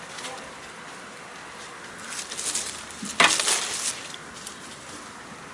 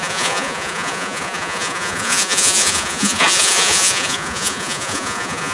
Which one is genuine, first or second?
first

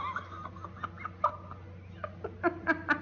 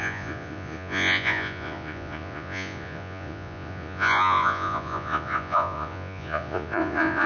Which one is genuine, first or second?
first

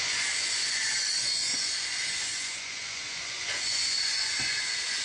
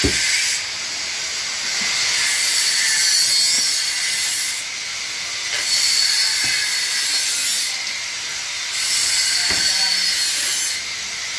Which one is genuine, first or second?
second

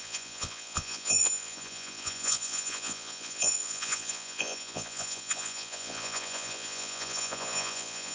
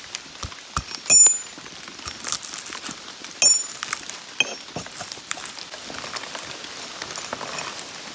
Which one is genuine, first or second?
second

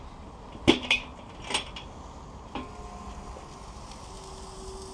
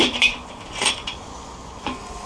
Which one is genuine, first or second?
first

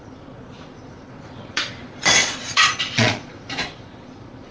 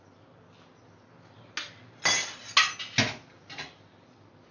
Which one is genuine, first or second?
second